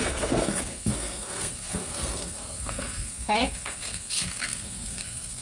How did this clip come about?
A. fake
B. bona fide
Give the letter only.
A